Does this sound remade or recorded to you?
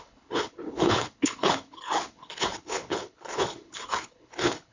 remade